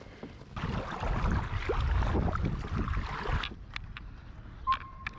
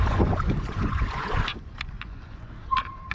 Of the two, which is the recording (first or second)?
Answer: first